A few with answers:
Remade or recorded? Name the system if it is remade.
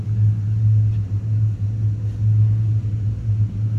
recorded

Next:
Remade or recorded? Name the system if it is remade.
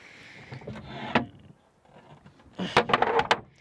recorded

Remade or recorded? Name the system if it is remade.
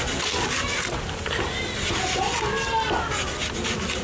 recorded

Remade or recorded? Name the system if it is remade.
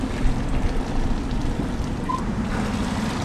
recorded